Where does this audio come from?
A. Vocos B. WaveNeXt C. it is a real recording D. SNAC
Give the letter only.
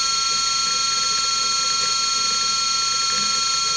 C